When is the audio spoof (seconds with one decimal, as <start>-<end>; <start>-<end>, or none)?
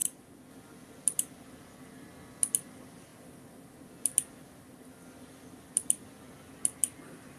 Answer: none